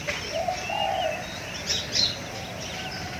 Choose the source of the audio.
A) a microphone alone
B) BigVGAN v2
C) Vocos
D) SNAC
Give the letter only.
A